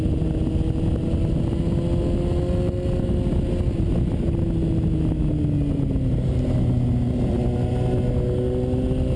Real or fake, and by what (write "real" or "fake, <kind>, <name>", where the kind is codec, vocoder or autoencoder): real